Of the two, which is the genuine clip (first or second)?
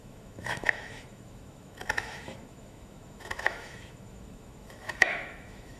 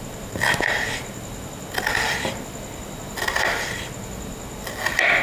second